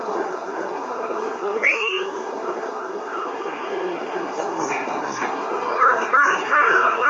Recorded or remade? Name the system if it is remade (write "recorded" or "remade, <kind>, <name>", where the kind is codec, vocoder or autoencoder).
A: remade, codec, SNAC